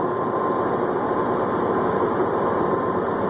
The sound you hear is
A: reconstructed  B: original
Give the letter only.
B